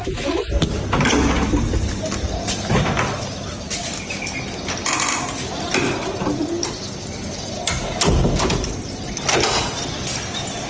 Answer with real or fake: real